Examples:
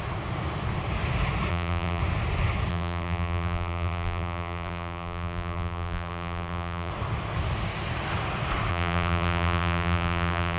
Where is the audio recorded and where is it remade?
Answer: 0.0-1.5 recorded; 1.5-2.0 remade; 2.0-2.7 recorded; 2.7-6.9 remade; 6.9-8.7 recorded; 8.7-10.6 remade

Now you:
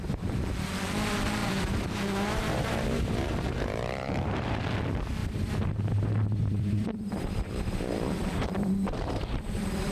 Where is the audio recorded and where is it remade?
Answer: 0.0-1.4 recorded; 1.4-4.5 remade; 4.5-5.2 recorded; 5.2-9.9 remade

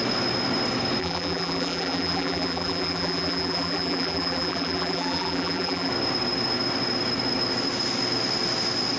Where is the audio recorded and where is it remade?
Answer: 0.0-1.0 recorded; 1.0-5.9 remade; 5.9-9.0 recorded

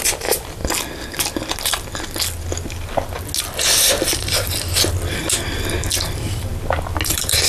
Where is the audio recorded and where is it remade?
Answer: 0.0-0.6 remade; 0.6-3.4 recorded; 3.4-6.5 remade; 6.5-7.1 recorded; 7.1-7.5 remade